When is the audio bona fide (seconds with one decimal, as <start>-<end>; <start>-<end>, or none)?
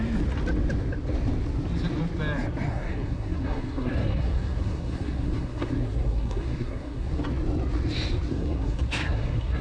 0.0-2.7; 7.2-8.3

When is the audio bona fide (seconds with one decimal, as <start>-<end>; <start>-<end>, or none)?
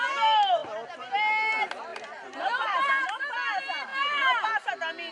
0.0-5.1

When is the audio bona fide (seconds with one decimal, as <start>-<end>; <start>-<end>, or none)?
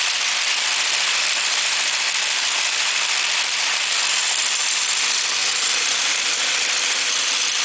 0.0-7.6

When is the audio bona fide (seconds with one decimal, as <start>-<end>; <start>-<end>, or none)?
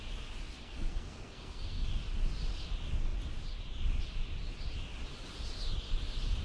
0.0-0.6; 2.0-6.4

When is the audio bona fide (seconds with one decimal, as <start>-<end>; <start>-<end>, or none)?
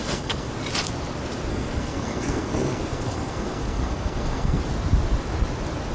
0.5-1.5; 4.6-5.9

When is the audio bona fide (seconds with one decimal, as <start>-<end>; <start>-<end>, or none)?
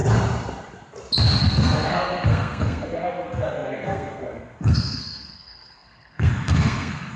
0.0-1.4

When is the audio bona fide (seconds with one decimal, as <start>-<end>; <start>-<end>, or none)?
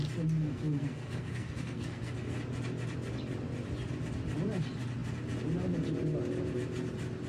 0.0-0.4; 2.4-7.3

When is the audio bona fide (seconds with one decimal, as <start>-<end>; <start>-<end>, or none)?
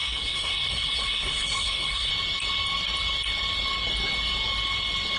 2.1-5.2